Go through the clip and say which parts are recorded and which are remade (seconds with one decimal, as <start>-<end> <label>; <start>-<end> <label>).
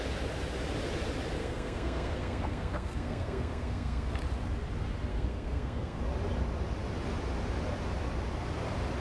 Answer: 0.0-1.4 recorded; 1.4-4.2 remade; 4.2-5.1 recorded; 5.1-6.0 remade; 6.0-9.0 recorded